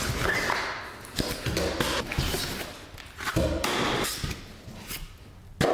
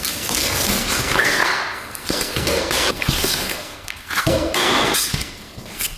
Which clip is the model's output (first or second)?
second